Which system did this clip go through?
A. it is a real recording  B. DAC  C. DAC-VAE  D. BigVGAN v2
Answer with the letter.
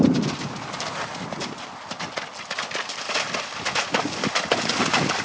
A